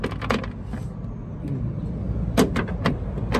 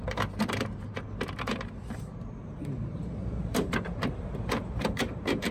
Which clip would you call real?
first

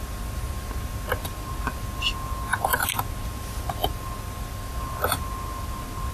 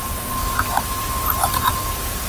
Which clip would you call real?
first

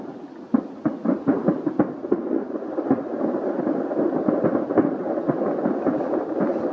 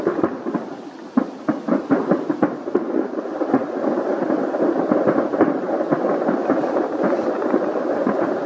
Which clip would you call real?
first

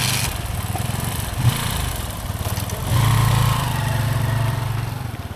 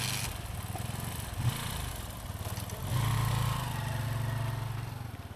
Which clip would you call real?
second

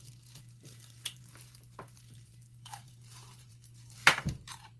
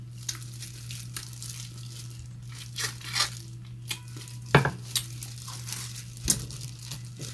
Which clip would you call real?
second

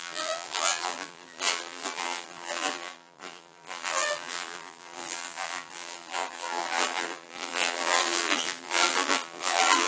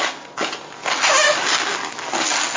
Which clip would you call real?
second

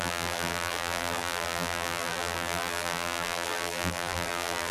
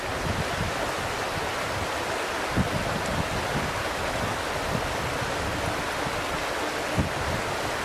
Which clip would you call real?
second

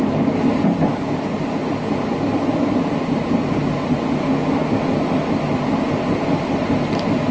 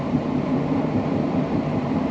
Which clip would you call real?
first